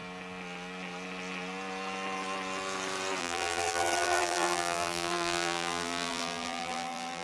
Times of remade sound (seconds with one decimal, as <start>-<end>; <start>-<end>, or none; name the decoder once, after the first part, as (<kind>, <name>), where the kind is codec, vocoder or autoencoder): 3.2-7.2 (vocoder, BigVGAN v2)